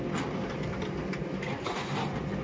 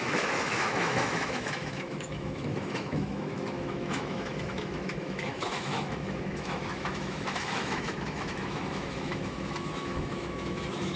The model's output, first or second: second